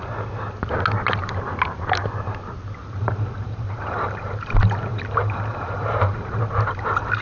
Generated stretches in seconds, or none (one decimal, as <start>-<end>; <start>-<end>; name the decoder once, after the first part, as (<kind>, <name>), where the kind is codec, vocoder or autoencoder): 2.8-4.4 (vocoder, BigVGAN v2); 4.9-6.4